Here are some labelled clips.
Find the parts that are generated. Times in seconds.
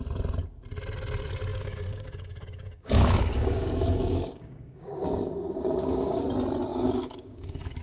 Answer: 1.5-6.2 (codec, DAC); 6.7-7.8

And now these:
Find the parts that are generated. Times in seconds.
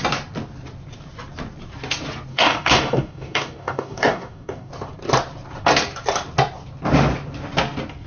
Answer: 2.3-4.7 (codec, DAC)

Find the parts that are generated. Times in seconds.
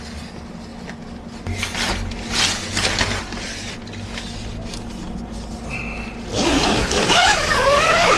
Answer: 6.3-8.2 (codec, DAC)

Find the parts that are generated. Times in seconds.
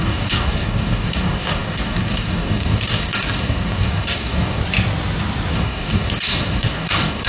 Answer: 0.0-4.6 (codec, DAC); 5.5-7.3